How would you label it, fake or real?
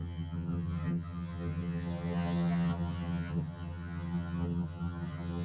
fake